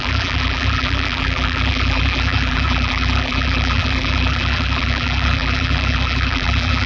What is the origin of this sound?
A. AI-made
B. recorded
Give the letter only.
A